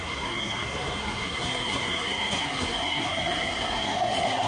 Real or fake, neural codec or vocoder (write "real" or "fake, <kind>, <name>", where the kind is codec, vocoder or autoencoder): fake, codec, SNAC